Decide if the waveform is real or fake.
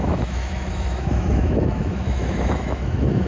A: fake